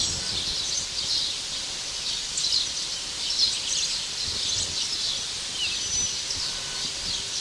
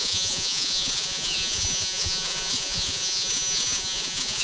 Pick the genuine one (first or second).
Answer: first